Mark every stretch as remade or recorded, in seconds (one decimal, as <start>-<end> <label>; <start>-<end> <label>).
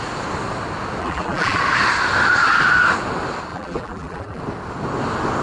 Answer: 0.0-1.0 recorded; 1.0-1.6 remade; 1.6-3.5 recorded; 3.5-4.4 remade; 4.4-5.4 recorded